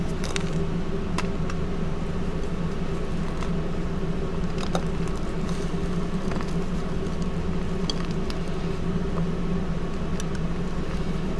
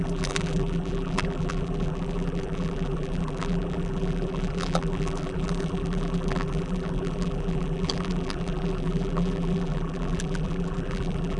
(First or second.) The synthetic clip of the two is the second